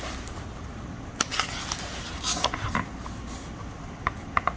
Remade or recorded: recorded